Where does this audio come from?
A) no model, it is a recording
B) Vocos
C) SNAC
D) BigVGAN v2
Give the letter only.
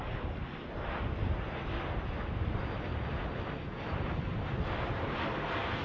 A